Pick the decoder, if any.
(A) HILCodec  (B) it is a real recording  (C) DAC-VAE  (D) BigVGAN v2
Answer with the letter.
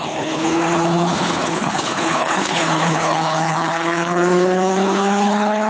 A